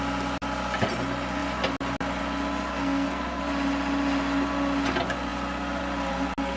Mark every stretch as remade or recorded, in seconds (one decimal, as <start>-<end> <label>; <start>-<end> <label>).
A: 0.0-2.7 recorded; 2.7-3.4 remade; 3.4-6.6 recorded